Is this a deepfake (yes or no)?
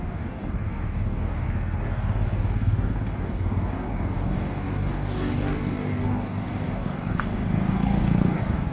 yes